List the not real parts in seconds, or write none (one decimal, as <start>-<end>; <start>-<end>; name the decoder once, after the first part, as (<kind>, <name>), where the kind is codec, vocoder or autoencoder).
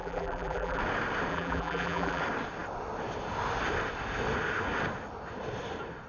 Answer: 0.0-0.8 (vocoder, BigVGAN v2); 1.3-2.2